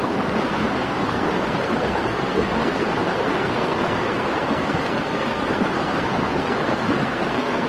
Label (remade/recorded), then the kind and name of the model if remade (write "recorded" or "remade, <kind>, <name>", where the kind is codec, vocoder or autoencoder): remade, codec, SNAC